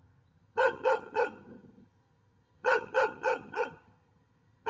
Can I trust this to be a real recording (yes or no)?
no